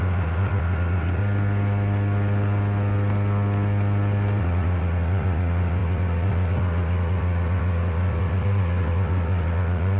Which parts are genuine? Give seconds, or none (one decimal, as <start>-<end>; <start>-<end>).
1.2-4.4

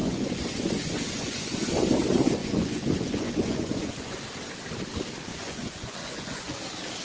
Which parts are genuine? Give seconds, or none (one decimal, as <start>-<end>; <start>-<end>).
1.8-2.4; 4.2-5.3; 6.6-7.0

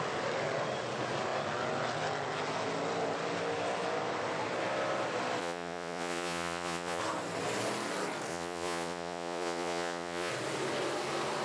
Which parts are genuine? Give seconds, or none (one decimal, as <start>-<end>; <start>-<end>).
0.0-5.4; 7.0-8.3; 10.3-11.4

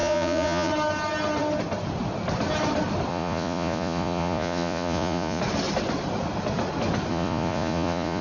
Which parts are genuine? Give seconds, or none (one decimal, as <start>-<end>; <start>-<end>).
0.7-3.1; 5.4-7.1

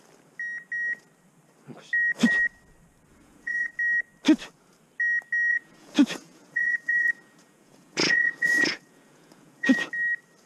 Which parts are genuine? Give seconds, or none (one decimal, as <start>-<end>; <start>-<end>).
0.0-3.1; 3.7-5.5; 9.9-10.5